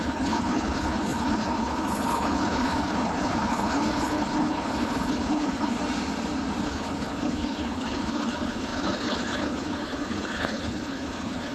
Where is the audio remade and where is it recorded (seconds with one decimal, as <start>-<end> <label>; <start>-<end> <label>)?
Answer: 0.0-5.8 remade; 5.8-6.6 recorded; 6.6-11.5 remade